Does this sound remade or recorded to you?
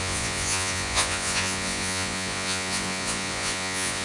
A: remade